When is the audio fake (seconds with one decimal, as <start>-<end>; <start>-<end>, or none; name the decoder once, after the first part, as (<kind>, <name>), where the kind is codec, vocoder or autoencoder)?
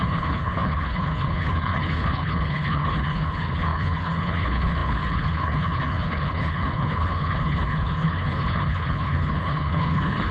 0.0-10.3 (codec, HILCodec)